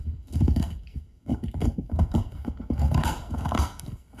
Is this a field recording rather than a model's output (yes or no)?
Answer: no